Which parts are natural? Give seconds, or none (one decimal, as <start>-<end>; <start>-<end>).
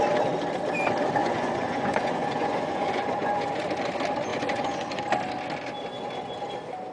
0.0-1.2; 3.6-4.3; 5.0-6.9